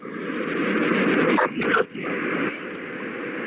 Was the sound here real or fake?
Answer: real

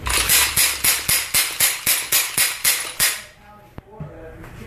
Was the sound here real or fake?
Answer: real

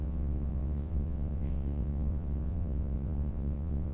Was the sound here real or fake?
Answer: fake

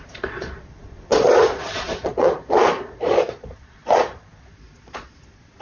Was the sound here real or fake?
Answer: fake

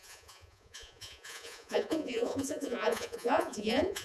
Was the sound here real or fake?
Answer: fake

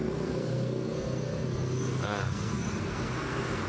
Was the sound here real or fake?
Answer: fake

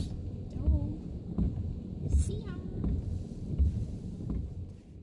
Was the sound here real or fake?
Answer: real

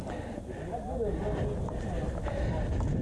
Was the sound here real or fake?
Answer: real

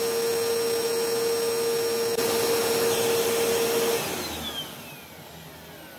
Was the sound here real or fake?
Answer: real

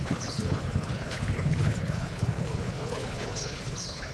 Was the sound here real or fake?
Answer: fake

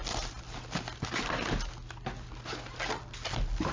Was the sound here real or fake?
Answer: real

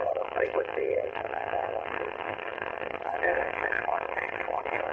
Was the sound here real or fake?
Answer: fake